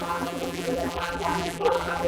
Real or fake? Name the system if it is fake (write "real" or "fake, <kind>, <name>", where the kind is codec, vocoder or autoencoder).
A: fake, vocoder, BigVGAN v2